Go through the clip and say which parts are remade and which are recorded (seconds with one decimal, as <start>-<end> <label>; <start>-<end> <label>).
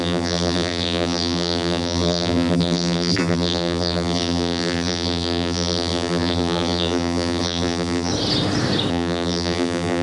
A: 0.0-8.1 remade; 8.1-8.9 recorded; 8.9-10.0 remade